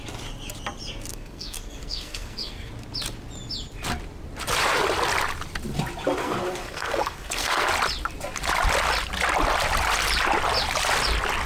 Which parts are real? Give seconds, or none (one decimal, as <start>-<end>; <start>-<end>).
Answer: 0.0-1.1; 2.7-6.2; 7.7-11.5